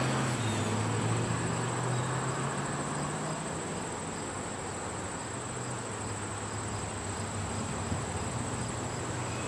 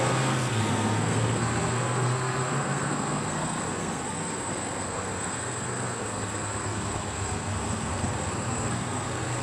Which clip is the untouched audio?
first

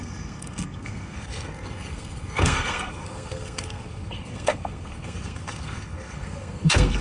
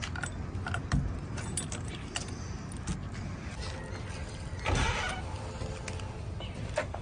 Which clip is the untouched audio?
second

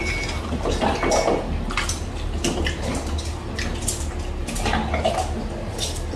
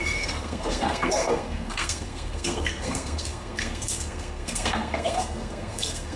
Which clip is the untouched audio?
first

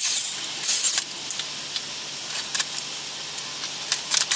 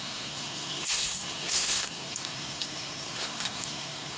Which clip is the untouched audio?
first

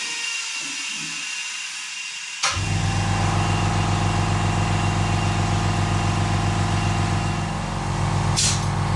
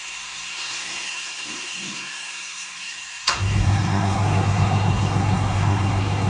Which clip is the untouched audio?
first